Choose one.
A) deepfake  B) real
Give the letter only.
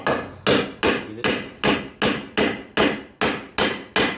B